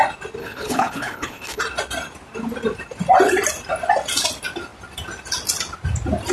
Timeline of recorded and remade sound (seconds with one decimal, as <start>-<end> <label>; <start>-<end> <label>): 0.0-0.4 recorded; 0.4-1.6 remade; 1.6-6.3 recorded